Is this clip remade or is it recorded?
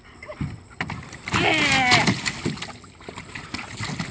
recorded